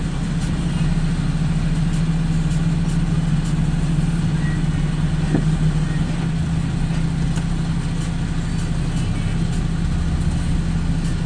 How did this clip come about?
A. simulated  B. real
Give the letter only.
B